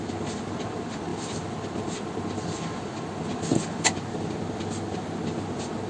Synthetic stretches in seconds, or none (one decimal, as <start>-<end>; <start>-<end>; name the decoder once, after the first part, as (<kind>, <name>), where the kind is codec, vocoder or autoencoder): none